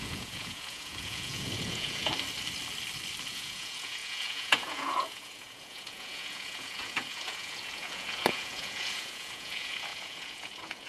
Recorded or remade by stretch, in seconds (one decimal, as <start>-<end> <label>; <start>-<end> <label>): 0.0-2.1 remade; 2.1-3.3 recorded; 3.3-10.9 remade